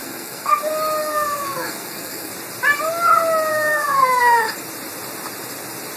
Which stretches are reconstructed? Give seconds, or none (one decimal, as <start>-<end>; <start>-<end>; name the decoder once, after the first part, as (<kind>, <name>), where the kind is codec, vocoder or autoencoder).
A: 0.0-0.6 (codec, SNAC); 1.0-2.3; 3.5-4.5